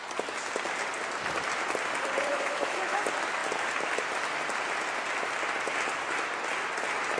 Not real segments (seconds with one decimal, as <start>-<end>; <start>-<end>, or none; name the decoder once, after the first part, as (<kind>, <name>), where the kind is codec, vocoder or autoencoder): 2.3-3.0 (autoencoder, DAC-VAE)